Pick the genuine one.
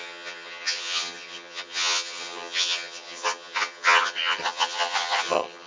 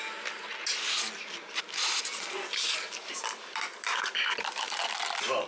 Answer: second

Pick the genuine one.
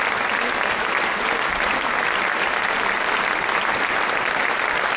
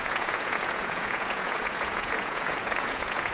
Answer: first